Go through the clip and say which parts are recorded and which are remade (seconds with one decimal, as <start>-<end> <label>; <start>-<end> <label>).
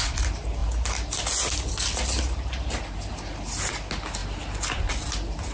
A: 0.0-5.5 recorded